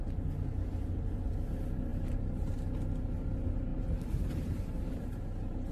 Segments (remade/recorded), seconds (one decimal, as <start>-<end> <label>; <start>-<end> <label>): 0.0-1.9 recorded; 1.9-2.5 remade; 2.5-3.7 recorded; 3.7-5.7 remade